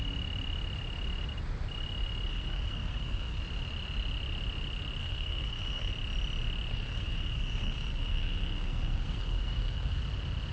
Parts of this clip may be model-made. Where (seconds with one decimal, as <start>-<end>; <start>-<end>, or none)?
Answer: 2.3-3.4; 5.0-5.9; 6.7-10.0